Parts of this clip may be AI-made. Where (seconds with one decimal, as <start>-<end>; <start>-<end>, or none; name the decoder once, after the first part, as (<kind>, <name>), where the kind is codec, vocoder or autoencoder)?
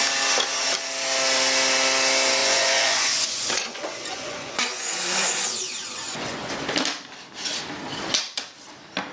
2.4-6.5 (vocoder, Vocos)